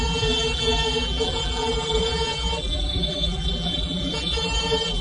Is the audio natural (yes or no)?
no